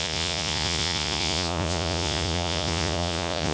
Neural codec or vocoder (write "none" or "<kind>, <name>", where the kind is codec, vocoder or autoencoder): vocoder, Vocos